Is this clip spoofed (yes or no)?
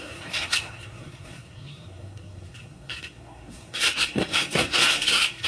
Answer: yes